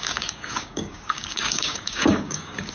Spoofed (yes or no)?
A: yes